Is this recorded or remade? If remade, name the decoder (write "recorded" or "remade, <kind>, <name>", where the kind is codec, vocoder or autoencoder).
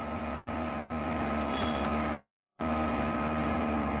remade, vocoder, Vocos